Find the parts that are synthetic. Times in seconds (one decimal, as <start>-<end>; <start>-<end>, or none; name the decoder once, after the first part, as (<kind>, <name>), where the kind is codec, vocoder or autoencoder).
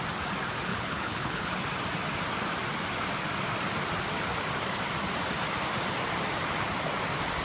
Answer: 0.7-1.5 (codec, HILCodec)